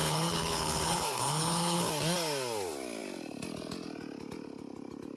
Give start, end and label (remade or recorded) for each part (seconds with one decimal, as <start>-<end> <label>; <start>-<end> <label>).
0.0-1.9 remade; 1.9-5.2 recorded

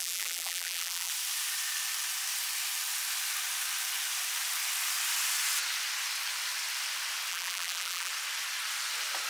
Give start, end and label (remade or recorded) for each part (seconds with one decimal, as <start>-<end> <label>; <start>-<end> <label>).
0.0-1.1 remade; 1.1-7.3 recorded; 7.3-8.1 remade; 8.1-9.3 recorded

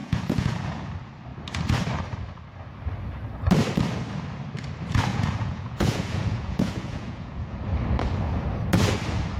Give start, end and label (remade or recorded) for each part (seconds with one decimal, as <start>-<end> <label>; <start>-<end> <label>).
0.0-0.9 remade; 0.9-5.1 recorded; 5.1-7.6 remade; 7.6-9.4 recorded

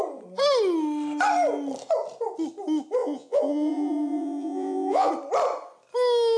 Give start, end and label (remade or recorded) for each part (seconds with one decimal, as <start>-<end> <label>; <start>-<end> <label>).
0.0-3.0 recorded; 3.0-5.1 remade; 5.1-6.4 recorded

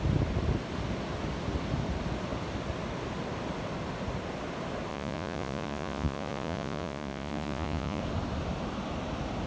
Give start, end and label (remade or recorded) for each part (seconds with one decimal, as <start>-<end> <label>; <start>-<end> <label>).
0.0-4.9 recorded; 4.9-8.0 remade; 8.0-9.5 recorded